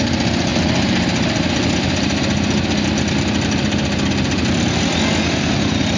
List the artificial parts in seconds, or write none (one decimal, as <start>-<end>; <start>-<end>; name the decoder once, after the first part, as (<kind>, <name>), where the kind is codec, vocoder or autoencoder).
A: none